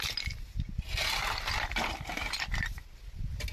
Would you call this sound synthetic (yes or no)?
no